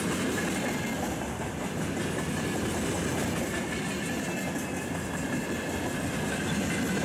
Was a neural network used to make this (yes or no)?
no